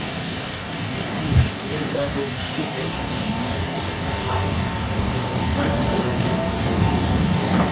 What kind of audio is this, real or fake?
fake